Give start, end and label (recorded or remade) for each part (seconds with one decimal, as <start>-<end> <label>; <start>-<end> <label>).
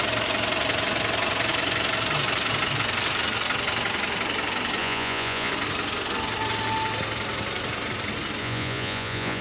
0.0-4.8 recorded; 4.8-5.5 remade; 5.5-8.4 recorded; 8.4-9.4 remade